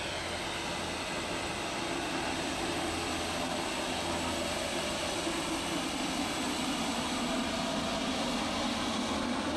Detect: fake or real real